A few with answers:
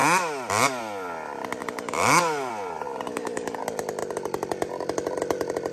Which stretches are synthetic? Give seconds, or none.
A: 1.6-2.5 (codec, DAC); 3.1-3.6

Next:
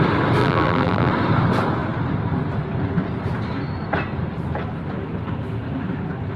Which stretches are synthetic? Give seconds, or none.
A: 0.4-1.1 (vocoder, BigVGAN v2)

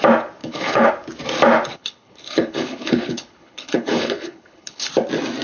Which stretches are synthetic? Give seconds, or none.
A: 0.4-0.9 (codec, HILCodec); 1.7-4.9